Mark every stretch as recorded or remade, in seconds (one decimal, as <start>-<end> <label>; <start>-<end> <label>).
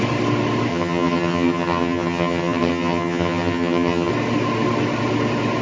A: 0.0-0.7 recorded; 0.7-4.1 remade; 4.1-5.6 recorded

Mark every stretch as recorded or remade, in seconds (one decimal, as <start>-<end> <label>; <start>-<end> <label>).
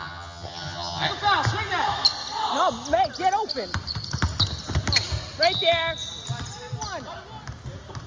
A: 0.0-1.1 remade; 1.1-8.1 recorded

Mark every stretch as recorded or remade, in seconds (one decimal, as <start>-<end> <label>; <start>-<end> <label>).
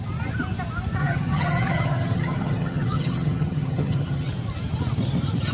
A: 0.0-1.0 recorded; 1.0-4.3 remade; 4.3-5.5 recorded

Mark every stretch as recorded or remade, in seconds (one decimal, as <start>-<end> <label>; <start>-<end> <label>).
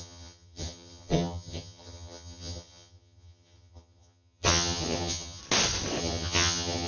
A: 0.0-5.4 remade; 5.4-6.0 recorded; 6.0-6.9 remade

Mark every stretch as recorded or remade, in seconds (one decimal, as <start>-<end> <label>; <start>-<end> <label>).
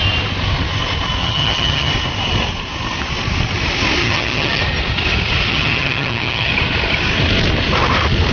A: 0.0-1.2 recorded; 1.2-1.9 remade; 1.9-4.0 recorded; 4.0-4.6 remade; 4.6-5.5 recorded; 5.5-6.5 remade; 6.5-8.3 recorded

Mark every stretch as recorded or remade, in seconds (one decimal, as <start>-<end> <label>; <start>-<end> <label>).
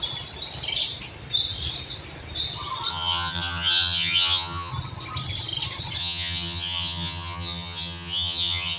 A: 0.0-2.9 recorded; 2.9-4.7 remade; 4.7-6.0 recorded; 6.0-8.8 remade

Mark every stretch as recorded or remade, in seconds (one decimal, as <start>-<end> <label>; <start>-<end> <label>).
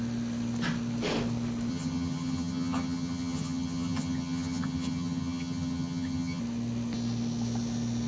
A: 0.0-1.7 recorded; 1.7-6.4 remade; 6.4-8.1 recorded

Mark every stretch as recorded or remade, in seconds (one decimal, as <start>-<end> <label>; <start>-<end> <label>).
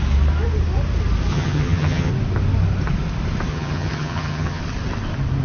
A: 0.0-1.3 recorded; 1.3-2.1 remade; 2.1-3.5 recorded; 3.5-4.6 remade; 4.6-5.4 recorded